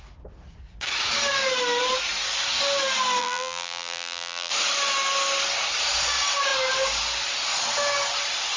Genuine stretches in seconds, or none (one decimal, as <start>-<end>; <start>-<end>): 0.0-3.2; 4.5-8.6